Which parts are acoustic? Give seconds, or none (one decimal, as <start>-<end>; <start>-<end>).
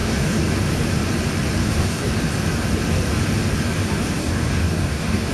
0.5-1.6; 2.1-4.2